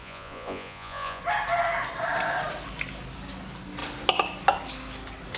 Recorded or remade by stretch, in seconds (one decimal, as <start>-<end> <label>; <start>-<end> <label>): 0.0-1.2 remade; 1.2-5.4 recorded